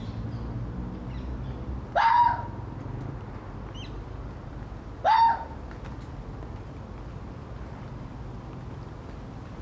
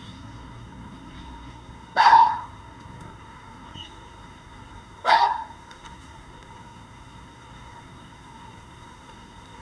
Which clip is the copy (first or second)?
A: second